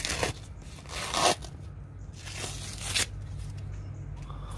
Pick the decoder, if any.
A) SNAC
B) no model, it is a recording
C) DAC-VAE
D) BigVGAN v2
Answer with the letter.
B